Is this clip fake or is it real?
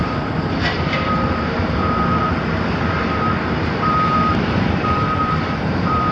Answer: fake